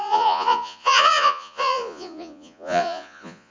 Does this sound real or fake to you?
fake